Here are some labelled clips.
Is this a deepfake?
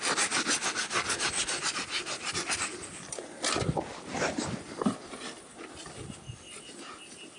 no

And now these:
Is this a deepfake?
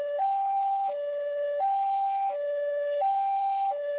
yes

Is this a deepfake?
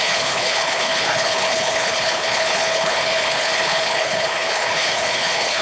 yes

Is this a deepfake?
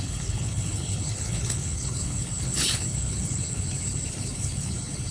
yes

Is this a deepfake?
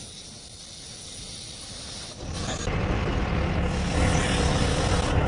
no